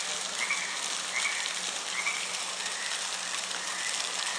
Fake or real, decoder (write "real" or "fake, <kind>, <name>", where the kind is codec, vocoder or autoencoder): real